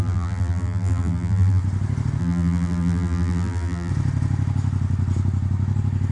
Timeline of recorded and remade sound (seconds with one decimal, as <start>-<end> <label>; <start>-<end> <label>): 0.0-1.6 remade; 1.6-2.2 recorded; 2.2-3.9 remade; 3.9-6.1 recorded